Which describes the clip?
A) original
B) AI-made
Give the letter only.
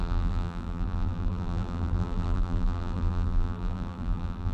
B